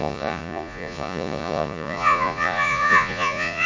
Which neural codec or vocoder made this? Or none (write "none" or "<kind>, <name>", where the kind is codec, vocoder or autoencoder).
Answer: vocoder, Vocos